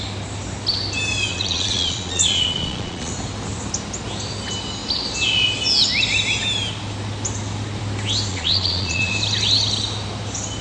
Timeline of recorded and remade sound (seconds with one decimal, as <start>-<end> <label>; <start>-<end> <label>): 0.0-1.3 recorded; 1.3-3.1 remade; 3.1-8.3 recorded; 8.3-9.1 remade; 9.1-10.6 recorded